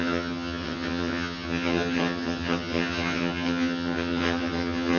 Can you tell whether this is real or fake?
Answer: fake